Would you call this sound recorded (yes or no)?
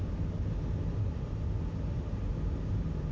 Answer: yes